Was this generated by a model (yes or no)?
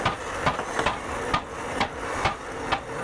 no